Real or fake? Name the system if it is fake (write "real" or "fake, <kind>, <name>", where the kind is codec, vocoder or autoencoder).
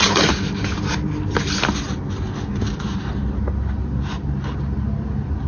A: real